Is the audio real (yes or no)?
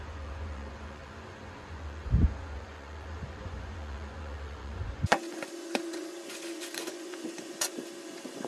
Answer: no